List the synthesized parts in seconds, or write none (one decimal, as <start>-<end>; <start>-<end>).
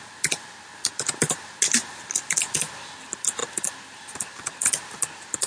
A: none